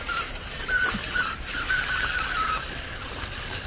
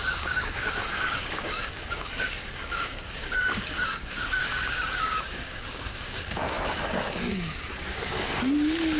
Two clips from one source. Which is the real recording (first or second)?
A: first